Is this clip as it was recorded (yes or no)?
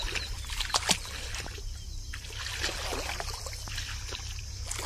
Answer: yes